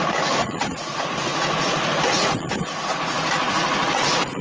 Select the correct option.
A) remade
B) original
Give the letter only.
A